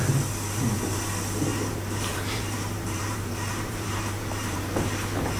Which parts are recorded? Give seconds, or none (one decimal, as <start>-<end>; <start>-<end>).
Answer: 0.0-1.5; 4.7-5.4